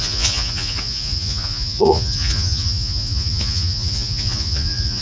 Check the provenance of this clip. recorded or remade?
remade